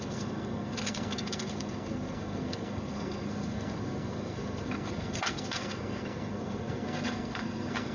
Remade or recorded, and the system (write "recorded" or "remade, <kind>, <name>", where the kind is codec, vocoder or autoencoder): remade, codec, SNAC